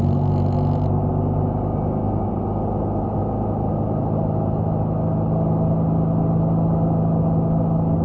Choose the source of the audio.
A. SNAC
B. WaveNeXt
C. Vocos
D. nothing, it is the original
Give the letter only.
D